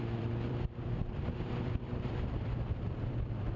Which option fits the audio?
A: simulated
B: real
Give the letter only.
A